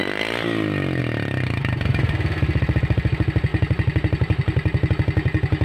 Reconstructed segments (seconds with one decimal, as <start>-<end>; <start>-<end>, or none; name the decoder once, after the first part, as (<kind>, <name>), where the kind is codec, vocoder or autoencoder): 3.5-4.9 (vocoder, BigVGAN v2)

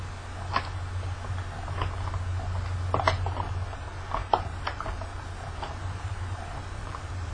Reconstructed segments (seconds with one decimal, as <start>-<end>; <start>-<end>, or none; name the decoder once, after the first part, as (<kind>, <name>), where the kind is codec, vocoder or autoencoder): 4.2-7.3 (vocoder, BigVGAN v2)

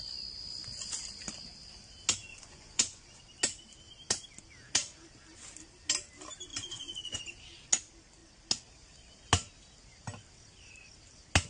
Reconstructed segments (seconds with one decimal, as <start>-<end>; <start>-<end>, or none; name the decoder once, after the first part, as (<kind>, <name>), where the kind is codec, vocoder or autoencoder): 2.3-3.2 (vocoder, Vocos); 6.5-7.2

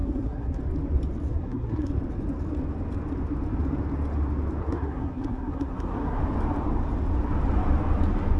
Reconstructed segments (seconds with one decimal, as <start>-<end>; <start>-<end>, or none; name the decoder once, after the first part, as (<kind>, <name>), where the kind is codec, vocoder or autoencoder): 0.0-0.6 (codec, SNAC); 1.3-1.9; 4.6-6.2

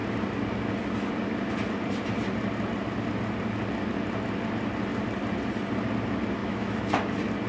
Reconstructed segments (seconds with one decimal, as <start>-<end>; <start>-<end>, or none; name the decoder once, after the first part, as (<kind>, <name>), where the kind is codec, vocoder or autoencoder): 6.4-6.9 (autoencoder, DAC-VAE)